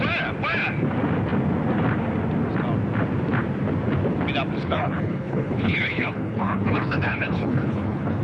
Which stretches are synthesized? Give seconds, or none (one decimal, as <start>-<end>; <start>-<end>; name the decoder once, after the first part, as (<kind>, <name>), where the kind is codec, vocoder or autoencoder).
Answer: 4.6-8.2 (codec, HILCodec)